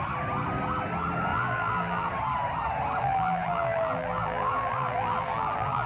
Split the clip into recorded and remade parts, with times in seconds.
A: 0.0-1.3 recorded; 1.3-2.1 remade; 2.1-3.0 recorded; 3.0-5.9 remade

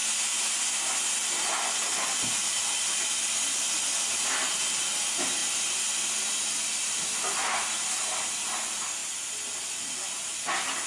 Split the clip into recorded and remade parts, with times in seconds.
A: 0.0-10.9 recorded

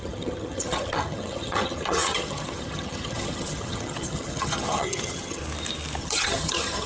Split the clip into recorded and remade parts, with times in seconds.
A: 0.0-5.4 remade; 5.4-6.0 recorded; 6.0-6.9 remade